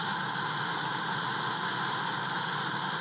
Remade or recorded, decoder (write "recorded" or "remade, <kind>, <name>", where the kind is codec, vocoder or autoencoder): recorded